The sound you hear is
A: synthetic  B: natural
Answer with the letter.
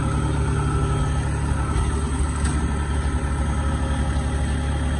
B